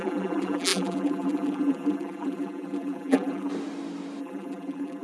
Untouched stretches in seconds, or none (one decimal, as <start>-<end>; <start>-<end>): 3.5-4.2